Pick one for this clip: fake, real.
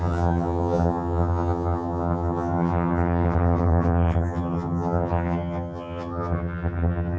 fake